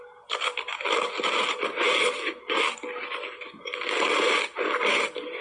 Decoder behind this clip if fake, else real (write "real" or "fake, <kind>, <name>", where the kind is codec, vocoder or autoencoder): real